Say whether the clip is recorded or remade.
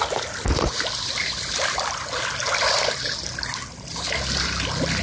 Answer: recorded